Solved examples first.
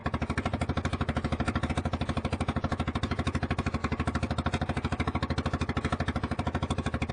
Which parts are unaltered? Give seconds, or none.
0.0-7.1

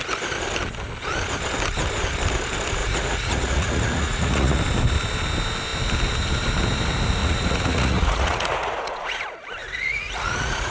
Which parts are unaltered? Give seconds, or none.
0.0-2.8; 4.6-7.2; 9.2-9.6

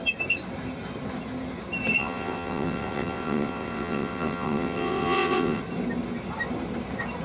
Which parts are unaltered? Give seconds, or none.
0.0-2.0; 5.6-7.2

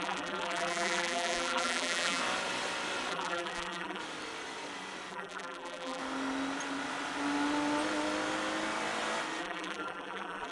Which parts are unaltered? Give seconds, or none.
2.2-3.1; 4.0-5.1; 6.0-9.4

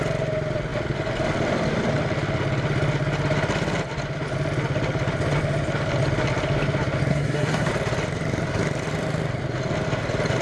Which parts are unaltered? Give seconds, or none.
0.0-7.1; 7.7-10.4

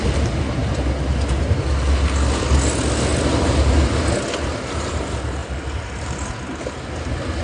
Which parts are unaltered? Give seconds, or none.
0.0-5.4; 6.3-7.4

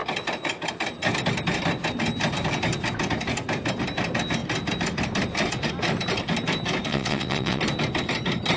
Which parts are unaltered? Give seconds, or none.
0.0-6.9; 7.6-8.6